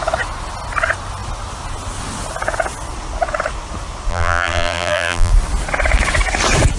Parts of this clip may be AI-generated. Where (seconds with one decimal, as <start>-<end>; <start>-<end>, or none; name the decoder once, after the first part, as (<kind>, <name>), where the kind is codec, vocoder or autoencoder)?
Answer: 4.1-5.3 (vocoder, BigVGAN v2)

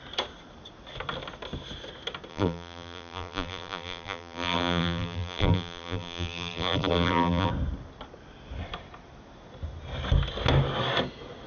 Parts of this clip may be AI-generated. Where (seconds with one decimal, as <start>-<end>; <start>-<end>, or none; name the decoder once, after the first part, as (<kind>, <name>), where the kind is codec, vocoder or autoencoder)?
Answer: 2.3-7.5 (vocoder, BigVGAN v2)